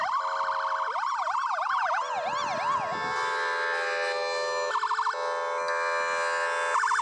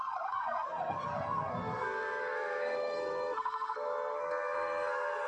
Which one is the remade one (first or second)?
second